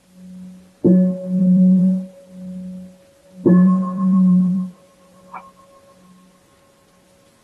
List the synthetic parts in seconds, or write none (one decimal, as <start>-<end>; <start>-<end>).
1.4-2.3; 3.2-5.2